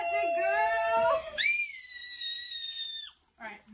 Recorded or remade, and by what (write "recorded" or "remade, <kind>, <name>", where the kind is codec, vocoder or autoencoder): recorded